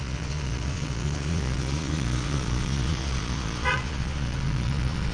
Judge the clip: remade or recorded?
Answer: remade